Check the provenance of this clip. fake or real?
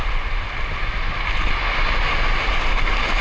real